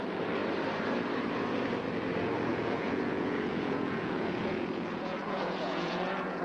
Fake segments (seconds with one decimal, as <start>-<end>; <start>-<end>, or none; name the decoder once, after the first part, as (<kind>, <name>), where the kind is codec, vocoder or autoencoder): 2.5-6.4 (vocoder, Vocos)